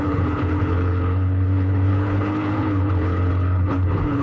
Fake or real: fake